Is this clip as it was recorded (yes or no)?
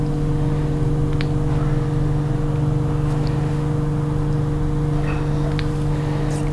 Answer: yes